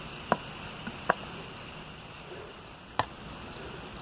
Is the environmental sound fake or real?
real